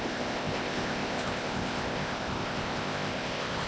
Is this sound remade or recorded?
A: remade